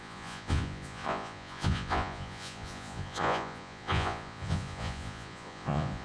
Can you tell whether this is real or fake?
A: fake